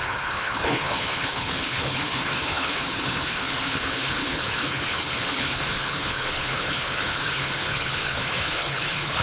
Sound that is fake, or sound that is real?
fake